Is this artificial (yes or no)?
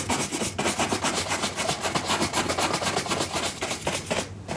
no